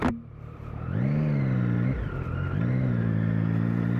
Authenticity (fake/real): real